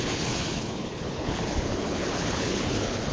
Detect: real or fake fake